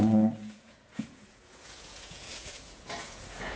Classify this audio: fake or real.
fake